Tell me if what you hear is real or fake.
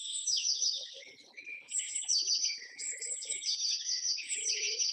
fake